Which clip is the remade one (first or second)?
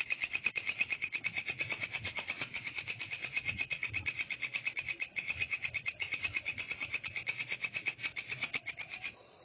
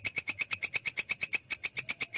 first